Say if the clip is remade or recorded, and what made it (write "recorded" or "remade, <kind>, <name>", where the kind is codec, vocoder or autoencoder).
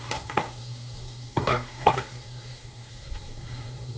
remade, codec, SNAC